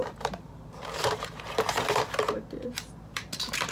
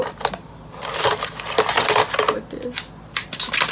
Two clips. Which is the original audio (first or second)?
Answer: second